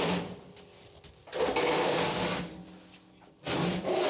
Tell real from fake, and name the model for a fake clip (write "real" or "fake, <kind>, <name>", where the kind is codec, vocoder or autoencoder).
real